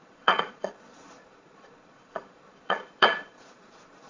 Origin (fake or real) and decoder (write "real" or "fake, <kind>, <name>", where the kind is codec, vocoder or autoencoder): fake, vocoder, Vocos